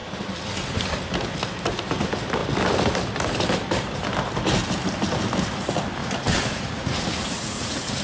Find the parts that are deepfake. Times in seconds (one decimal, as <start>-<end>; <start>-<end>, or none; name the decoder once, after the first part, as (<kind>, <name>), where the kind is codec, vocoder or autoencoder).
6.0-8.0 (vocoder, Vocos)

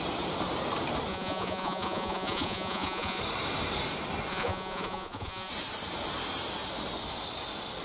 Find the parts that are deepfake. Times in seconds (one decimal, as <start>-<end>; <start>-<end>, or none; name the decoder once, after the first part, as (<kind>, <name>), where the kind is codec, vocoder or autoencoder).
1.1-3.2 (vocoder, Vocos); 4.3-5.5

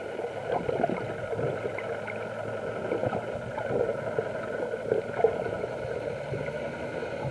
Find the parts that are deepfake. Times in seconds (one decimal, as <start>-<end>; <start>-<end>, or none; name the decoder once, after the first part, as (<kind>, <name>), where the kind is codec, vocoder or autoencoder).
none